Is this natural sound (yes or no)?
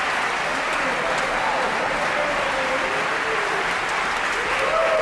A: yes